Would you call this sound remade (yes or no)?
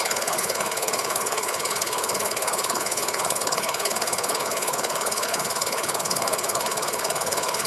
yes